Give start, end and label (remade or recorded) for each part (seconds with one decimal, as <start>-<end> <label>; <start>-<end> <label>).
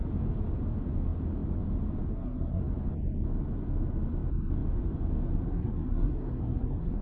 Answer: 0.0-2.1 recorded; 2.1-2.6 remade; 2.6-5.5 recorded; 5.5-7.0 remade